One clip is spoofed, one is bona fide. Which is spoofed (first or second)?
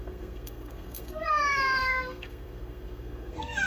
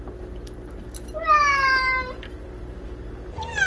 first